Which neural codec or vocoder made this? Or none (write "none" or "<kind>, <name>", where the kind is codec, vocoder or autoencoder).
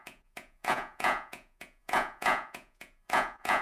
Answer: vocoder, Vocos